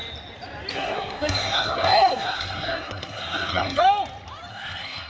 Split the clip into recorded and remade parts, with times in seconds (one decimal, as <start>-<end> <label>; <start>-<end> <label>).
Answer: 0.0-0.7 recorded; 0.7-3.8 remade; 3.8-4.5 recorded; 4.5-5.1 remade